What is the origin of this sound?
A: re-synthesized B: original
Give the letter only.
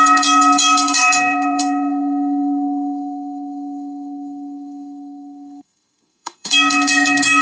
A